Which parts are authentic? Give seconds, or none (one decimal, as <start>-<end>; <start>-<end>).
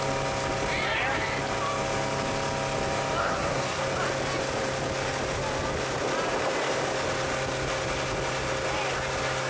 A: 0.0-3.2; 3.8-9.5